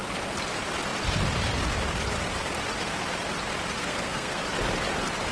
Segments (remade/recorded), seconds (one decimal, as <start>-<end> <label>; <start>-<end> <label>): 0.0-3.8 recorded; 3.8-4.4 remade; 4.4-5.3 recorded